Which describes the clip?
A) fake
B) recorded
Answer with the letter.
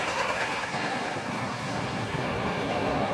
A